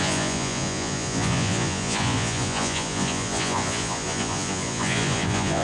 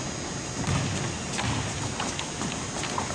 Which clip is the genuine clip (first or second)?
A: second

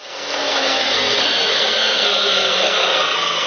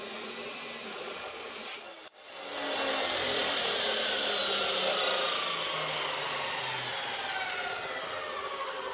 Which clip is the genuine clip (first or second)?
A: second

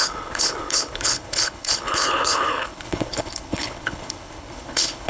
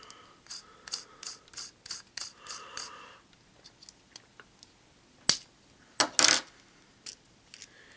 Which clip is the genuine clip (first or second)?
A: second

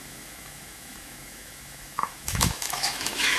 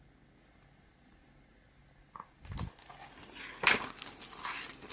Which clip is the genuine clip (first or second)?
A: second